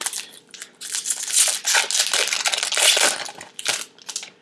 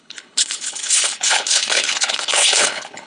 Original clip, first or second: first